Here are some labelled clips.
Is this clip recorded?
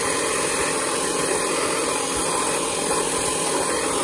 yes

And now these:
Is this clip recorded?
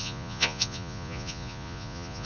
no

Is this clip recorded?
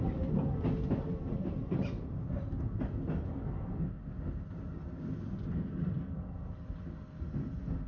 yes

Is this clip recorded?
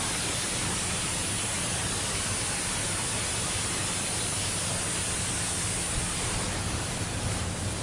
yes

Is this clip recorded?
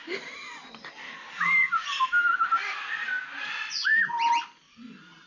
no